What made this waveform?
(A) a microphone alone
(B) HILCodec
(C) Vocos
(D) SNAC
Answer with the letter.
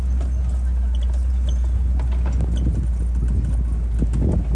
A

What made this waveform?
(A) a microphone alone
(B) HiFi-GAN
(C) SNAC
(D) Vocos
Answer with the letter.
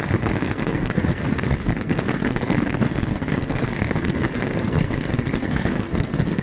C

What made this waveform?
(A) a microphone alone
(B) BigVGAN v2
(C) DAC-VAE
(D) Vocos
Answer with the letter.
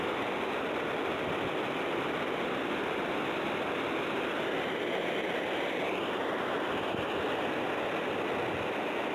A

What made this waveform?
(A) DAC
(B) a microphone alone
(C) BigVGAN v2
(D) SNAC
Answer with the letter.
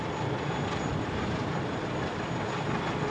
B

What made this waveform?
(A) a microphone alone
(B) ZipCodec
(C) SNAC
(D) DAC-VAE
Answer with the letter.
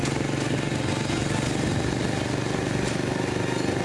A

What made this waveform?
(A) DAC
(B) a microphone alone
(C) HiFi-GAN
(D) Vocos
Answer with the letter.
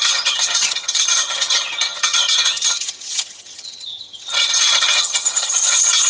C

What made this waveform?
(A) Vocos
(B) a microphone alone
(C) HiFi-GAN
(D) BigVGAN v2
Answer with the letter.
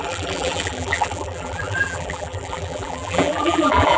D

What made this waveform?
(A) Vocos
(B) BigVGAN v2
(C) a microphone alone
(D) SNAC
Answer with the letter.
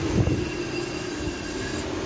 C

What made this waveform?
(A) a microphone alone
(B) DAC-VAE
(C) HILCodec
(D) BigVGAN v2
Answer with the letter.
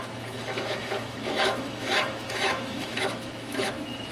B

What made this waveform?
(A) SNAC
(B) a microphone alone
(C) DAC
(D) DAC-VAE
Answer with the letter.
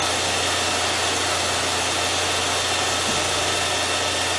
B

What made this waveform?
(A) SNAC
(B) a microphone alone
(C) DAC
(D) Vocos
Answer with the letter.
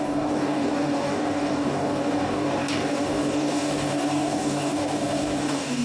C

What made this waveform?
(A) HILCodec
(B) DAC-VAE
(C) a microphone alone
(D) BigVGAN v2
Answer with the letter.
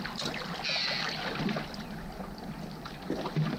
C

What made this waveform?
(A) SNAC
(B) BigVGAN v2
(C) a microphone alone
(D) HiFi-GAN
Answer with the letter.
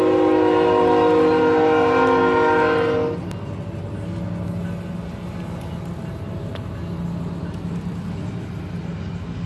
C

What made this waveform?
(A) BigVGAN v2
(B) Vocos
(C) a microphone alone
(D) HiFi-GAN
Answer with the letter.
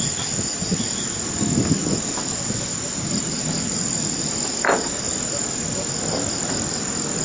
C